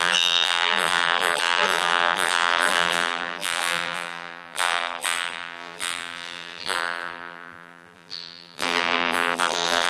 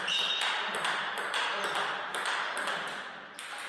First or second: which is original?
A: second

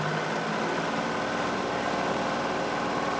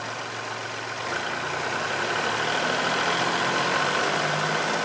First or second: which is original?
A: second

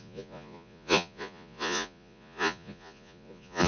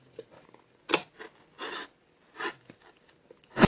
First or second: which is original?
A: second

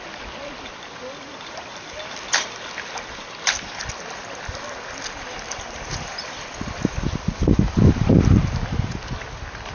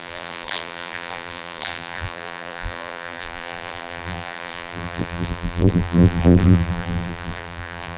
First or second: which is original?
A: first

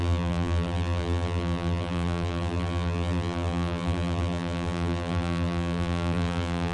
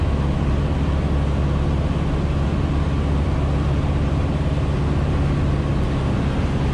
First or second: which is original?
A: second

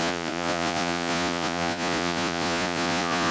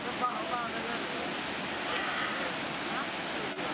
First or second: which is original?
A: second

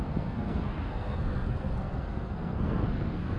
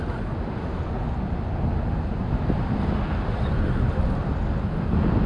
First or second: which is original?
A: second